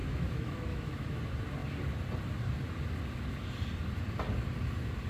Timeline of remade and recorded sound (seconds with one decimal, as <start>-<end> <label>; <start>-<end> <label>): 0.0-1.2 remade; 1.2-5.1 recorded